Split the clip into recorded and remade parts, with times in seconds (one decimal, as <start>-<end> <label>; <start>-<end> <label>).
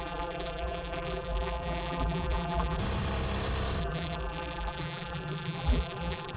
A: 0.0-2.8 remade; 2.8-3.8 recorded; 3.8-6.4 remade